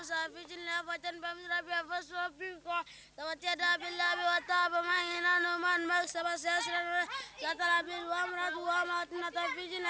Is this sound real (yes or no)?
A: yes